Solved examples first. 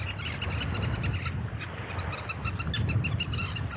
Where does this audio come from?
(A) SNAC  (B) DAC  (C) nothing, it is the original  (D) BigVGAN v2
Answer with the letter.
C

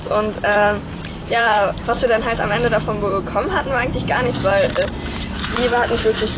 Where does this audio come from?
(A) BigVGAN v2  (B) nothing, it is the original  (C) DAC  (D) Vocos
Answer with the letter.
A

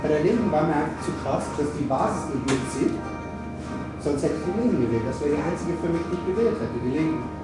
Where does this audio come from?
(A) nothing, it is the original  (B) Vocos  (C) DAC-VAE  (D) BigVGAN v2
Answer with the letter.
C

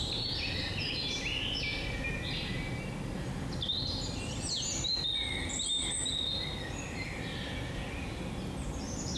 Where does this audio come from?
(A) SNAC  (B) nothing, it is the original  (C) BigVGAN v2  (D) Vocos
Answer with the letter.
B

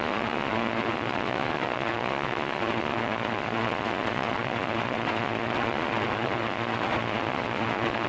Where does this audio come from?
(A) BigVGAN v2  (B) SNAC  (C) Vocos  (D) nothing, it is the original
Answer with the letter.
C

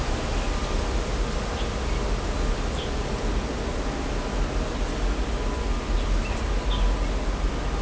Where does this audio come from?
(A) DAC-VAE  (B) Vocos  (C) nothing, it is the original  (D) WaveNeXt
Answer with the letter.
C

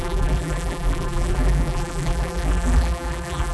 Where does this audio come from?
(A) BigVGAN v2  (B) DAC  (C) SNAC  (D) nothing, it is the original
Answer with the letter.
A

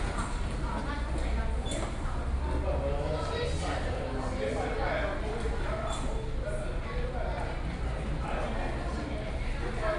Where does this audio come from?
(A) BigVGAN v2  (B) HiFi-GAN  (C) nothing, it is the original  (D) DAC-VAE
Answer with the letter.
C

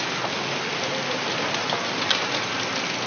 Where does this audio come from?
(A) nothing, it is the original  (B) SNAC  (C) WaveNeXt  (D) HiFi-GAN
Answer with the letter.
A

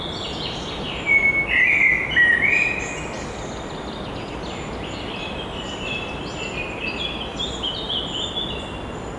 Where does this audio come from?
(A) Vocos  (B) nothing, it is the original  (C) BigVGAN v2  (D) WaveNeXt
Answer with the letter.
B